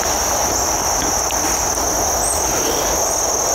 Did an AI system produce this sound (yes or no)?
no